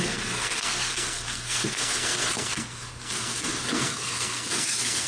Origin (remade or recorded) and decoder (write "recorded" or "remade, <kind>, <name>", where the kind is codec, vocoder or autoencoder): remade, codec, SNAC